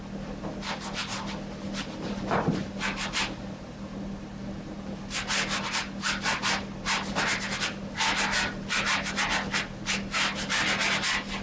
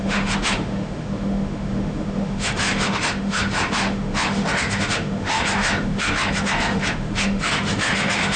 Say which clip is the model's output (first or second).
second